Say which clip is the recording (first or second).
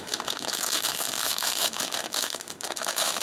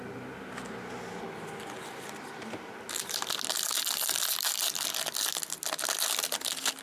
second